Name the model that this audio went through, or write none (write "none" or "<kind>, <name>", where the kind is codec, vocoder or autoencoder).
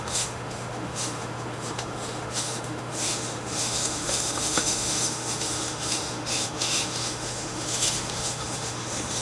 autoencoder, DAC-VAE